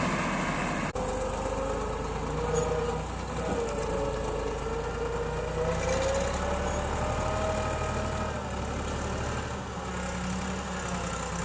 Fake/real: real